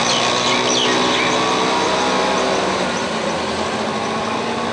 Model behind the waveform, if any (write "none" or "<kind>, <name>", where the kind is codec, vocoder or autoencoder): none